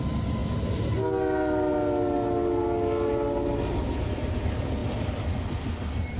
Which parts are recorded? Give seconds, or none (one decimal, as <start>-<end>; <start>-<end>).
0.0-6.2